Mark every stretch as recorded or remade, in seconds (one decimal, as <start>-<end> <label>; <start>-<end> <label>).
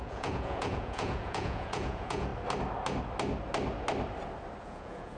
0.0-2.3 remade; 2.3-4.6 recorded; 4.6-5.2 remade